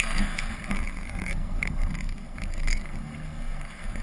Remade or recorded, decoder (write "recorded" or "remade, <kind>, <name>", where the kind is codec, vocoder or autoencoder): remade, codec, SNAC